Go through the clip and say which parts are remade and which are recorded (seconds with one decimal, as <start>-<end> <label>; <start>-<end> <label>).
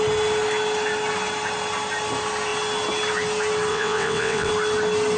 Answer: 0.0-3.7 recorded; 3.7-4.5 remade; 4.5-5.2 recorded